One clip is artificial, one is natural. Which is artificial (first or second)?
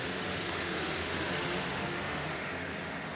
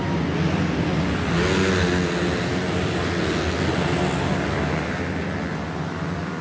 first